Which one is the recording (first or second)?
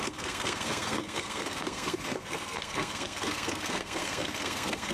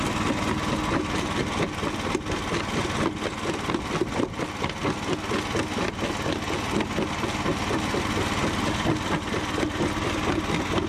second